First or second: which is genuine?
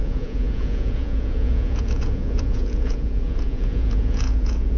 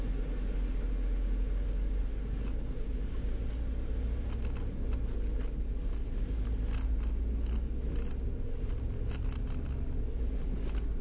second